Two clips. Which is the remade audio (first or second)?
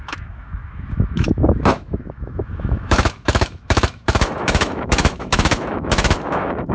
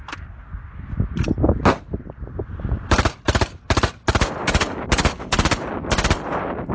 first